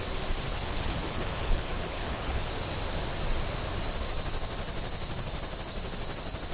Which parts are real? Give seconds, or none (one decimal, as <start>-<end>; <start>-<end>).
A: 0.0-0.5; 2.5-6.5